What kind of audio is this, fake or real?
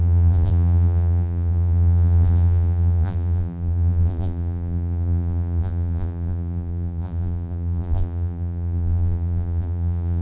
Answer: fake